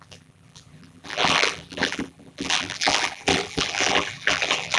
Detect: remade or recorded remade